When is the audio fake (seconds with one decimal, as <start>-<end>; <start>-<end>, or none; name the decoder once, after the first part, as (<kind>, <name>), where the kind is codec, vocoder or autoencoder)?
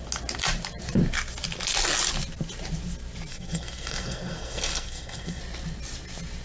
3.3-5.4 (codec, SNAC)